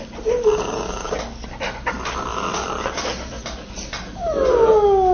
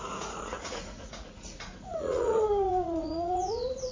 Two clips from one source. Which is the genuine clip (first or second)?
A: first